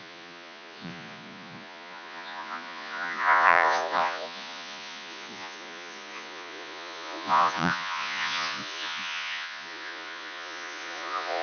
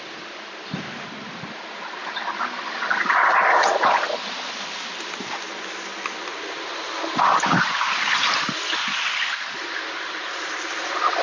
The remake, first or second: first